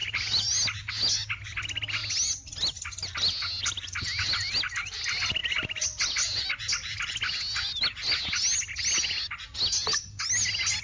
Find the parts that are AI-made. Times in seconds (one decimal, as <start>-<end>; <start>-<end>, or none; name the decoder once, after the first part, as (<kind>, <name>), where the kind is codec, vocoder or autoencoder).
none

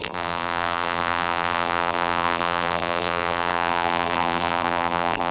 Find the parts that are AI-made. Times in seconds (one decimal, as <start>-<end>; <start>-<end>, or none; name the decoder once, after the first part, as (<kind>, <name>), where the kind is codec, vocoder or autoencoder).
0.0-5.3 (vocoder, BigVGAN v2)